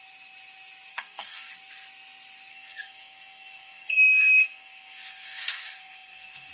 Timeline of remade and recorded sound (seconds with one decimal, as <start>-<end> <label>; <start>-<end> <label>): 0.0-0.9 recorded; 0.9-1.5 remade; 1.5-2.5 recorded; 2.5-6.5 remade